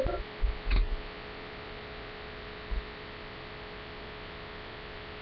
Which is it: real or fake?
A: real